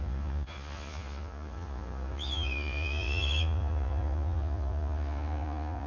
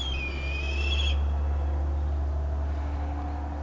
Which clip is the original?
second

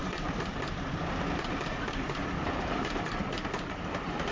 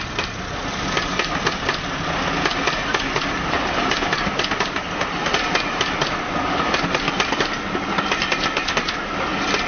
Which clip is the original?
second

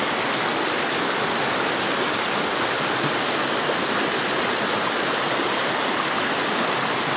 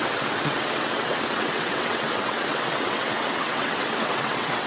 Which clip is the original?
first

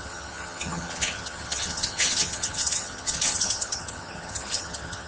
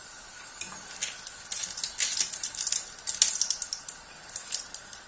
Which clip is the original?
second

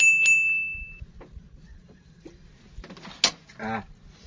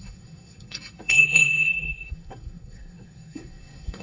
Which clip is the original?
first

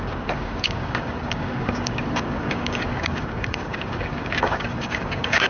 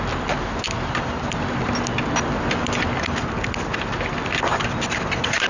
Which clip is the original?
second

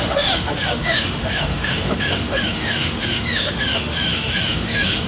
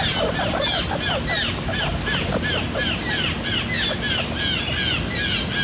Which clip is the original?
second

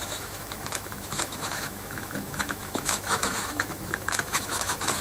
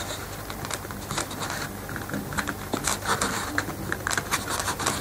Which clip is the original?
second